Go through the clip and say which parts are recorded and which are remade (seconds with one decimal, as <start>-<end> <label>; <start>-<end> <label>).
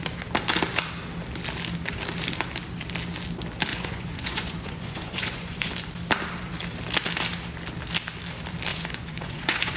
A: 0.0-3.7 recorded; 3.7-5.7 remade; 5.7-8.7 recorded; 8.7-9.8 remade